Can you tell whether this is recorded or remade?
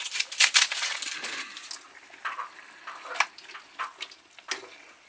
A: recorded